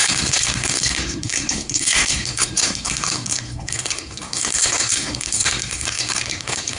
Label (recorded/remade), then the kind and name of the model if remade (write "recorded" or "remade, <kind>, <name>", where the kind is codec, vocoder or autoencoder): remade, codec, SNAC